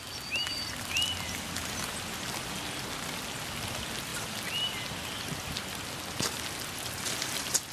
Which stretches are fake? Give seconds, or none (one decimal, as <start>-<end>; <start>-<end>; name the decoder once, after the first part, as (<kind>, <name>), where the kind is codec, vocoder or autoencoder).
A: none